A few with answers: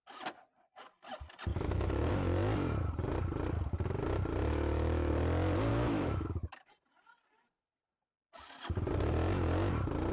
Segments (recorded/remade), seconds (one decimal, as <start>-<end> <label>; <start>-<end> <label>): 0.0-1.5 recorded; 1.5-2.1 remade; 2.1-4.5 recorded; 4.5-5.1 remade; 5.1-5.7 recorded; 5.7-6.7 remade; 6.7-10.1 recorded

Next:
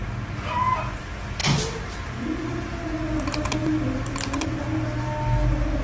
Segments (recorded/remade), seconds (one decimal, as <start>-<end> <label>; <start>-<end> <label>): 0.0-5.8 recorded

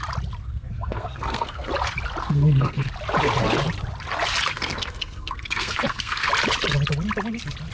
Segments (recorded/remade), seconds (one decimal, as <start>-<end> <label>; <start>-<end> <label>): 0.0-0.4 recorded; 0.4-1.7 remade; 1.7-2.2 recorded; 2.2-2.9 remade; 2.9-4.5 recorded; 4.5-6.3 remade; 6.3-7.7 recorded

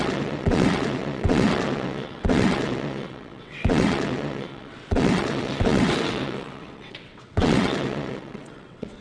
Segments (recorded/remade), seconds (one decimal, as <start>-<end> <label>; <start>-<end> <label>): 0.0-9.0 remade